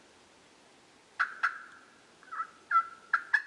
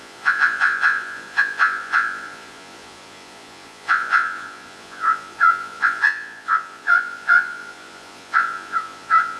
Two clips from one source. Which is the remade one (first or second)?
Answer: second